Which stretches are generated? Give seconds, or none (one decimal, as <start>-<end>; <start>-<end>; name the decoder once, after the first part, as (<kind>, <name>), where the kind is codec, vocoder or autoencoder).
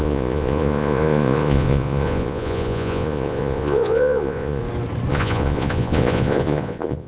0.0-4.6 (vocoder, Vocos); 5.1-7.1